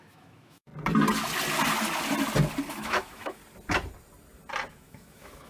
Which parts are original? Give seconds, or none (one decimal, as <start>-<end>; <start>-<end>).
0.7-2.7; 3.4-4.7